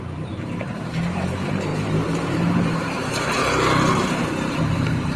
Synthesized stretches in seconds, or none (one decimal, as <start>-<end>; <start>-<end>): 0.0-1.7; 2.3-3.4; 4.5-5.2